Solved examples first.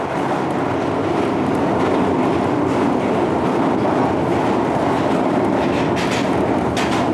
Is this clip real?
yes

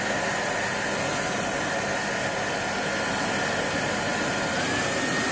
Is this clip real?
yes